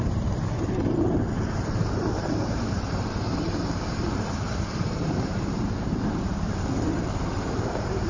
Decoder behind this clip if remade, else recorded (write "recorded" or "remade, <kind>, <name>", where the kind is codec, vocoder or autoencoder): remade, vocoder, BigVGAN v2